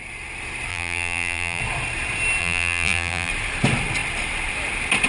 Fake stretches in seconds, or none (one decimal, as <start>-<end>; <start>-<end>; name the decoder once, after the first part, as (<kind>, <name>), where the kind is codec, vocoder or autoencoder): 0.7-1.6 (vocoder, BigVGAN v2); 2.4-3.3